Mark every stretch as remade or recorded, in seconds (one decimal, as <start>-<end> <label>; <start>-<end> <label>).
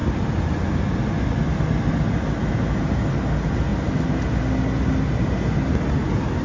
0.0-6.4 recorded